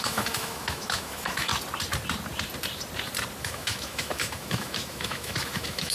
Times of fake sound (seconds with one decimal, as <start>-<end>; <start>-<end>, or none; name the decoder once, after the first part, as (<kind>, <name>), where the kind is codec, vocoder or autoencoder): 0.0-1.5 (autoencoder, DAC-VAE); 3.4-5.9